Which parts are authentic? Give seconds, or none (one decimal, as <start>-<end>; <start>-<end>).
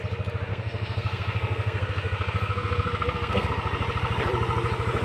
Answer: 0.0-0.5; 3.5-5.0